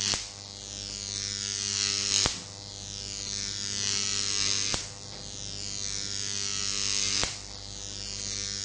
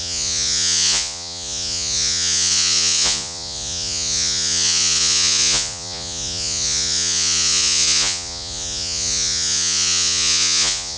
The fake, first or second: second